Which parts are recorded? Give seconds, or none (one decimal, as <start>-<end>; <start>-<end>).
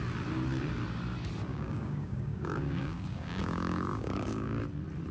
0.0-1.5; 4.6-5.1